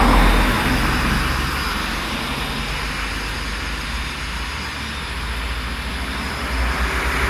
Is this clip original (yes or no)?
yes